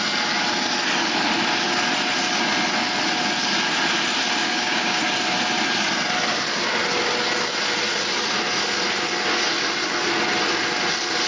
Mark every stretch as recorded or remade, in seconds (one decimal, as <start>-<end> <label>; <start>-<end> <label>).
0.0-4.4 recorded; 4.4-5.0 remade; 5.0-11.3 recorded